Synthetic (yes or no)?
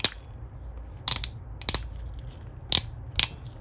no